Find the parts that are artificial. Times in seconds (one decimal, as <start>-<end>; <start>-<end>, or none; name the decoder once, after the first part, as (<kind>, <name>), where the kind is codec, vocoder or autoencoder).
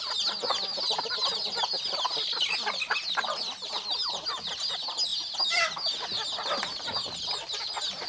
none